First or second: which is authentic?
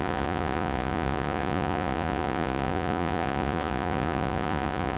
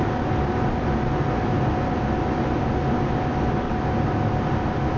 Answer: second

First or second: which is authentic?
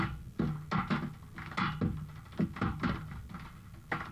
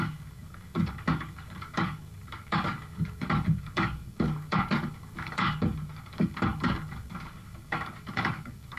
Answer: first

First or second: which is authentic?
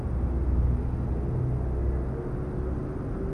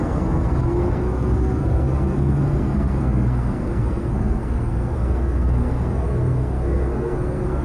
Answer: first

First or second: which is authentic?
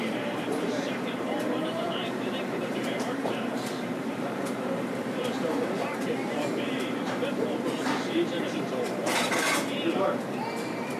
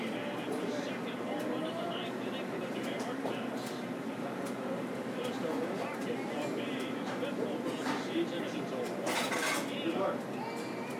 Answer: second